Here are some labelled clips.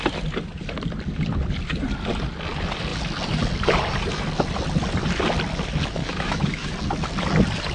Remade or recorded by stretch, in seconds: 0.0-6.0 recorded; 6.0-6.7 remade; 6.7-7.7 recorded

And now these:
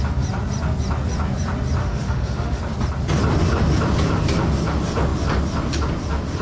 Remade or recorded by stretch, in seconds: 0.0-1.8 recorded; 1.8-2.6 remade; 2.6-6.4 recorded

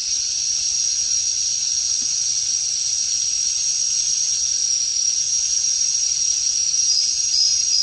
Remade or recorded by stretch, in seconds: 0.0-7.8 recorded

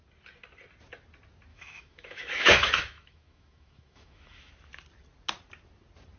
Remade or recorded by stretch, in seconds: 0.0-1.5 recorded; 1.5-4.5 remade; 4.5-6.2 recorded